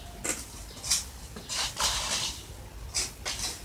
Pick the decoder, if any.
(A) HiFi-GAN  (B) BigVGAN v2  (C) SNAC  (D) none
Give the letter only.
D